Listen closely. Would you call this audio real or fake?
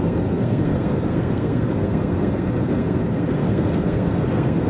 fake